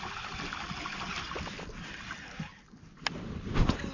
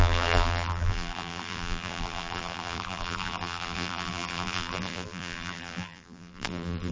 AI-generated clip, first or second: second